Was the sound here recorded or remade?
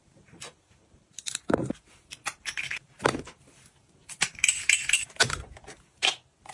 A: remade